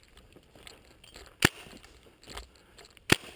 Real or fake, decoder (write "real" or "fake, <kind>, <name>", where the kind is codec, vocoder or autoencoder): real